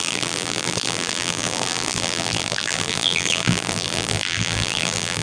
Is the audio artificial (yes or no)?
yes